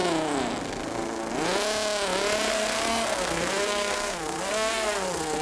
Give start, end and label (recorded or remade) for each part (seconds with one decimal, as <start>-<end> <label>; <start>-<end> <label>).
0.0-0.6 recorded; 0.6-1.3 remade; 1.3-2.5 recorded; 2.5-5.4 remade

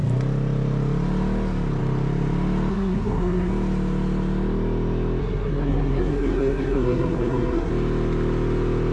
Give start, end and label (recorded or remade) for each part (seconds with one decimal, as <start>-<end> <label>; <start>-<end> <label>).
0.0-2.7 recorded; 2.7-3.5 remade; 3.5-5.2 recorded; 5.2-7.7 remade; 7.7-8.9 recorded

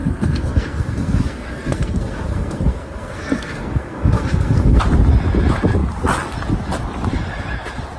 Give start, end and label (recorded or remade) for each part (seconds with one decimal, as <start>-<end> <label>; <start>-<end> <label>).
0.0-4.8 remade; 4.8-8.0 recorded

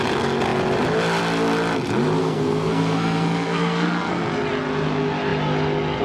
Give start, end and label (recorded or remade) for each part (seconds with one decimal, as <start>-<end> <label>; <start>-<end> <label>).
0.0-2.2 recorded; 2.2-4.3 remade; 4.3-6.0 recorded

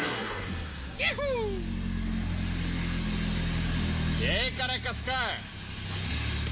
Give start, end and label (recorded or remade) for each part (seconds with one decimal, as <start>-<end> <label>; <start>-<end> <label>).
0.0-1.0 remade; 1.0-6.5 recorded

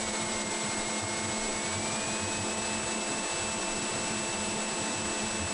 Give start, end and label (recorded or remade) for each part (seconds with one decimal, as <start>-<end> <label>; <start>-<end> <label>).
0.0-5.5 recorded